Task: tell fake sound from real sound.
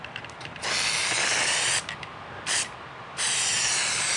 real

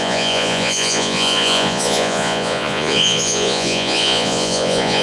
fake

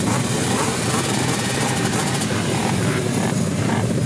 fake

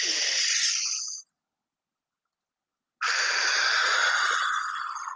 real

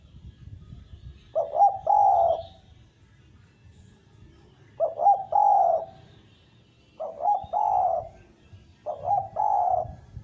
real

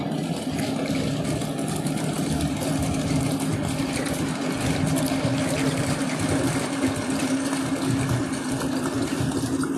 real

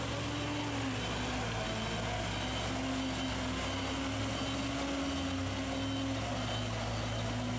real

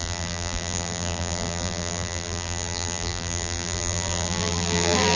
fake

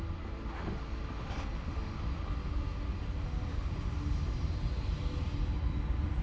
real